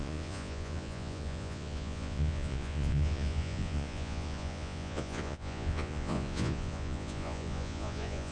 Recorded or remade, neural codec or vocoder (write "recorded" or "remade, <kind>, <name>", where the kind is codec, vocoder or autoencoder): remade, vocoder, Vocos